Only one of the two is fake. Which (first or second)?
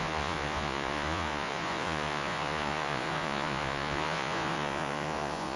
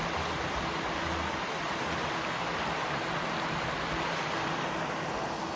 first